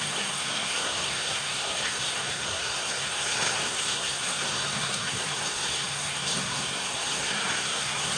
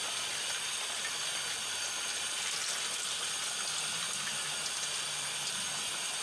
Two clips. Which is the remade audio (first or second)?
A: first